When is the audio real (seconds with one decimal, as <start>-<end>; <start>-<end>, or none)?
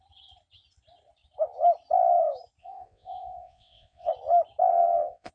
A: 0.0-2.6; 4.1-4.7